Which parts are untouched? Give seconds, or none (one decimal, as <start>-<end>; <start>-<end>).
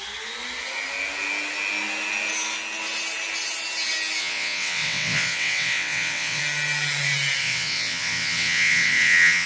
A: 0.0-4.2; 6.4-7.4